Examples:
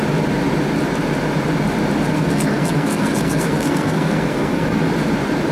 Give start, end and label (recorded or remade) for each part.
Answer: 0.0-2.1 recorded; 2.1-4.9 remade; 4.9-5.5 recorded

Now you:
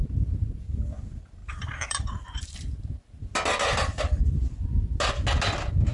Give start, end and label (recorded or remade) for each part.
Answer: 0.0-1.4 recorded; 1.4-2.8 remade; 2.8-5.9 recorded

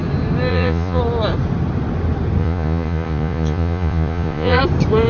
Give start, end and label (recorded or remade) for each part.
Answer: 0.0-0.5 recorded; 0.5-1.0 remade; 1.0-2.4 recorded; 2.4-4.6 remade; 4.6-5.1 recorded

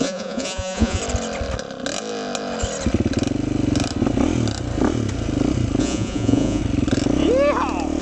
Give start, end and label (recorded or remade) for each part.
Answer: 0.0-1.0 remade; 1.0-5.8 recorded; 5.8-6.6 remade; 6.6-8.0 recorded